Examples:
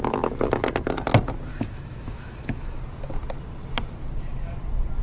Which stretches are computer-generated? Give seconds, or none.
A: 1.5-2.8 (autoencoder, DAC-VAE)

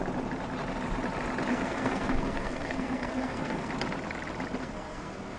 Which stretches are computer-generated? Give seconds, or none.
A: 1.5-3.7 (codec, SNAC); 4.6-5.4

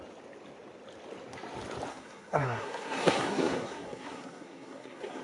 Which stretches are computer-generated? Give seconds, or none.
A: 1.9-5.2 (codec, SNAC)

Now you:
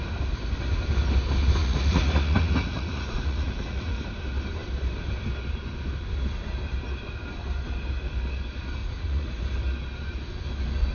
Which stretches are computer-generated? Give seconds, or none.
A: 1.6-4.0 (vocoder, Vocos); 8.8-9.4